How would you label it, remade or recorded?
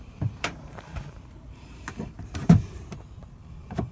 remade